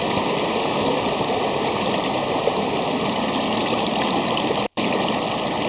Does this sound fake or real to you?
real